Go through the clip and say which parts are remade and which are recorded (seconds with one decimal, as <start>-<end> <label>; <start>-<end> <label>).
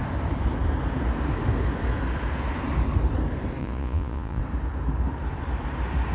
0.0-3.6 recorded; 3.6-4.4 remade; 4.4-6.1 recorded